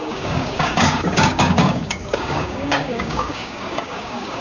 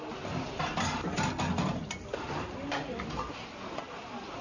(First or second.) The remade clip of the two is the first